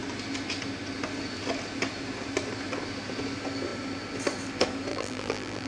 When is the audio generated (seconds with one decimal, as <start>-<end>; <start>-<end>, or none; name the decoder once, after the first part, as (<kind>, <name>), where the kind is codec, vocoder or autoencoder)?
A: 4.9-5.7 (vocoder, BigVGAN v2)